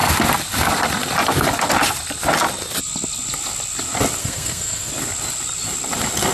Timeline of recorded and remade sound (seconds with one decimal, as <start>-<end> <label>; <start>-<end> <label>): 0.0-4.2 recorded; 4.2-4.9 remade; 4.9-6.3 recorded